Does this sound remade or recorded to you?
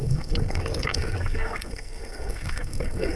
remade